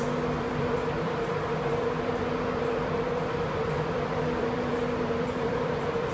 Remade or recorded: remade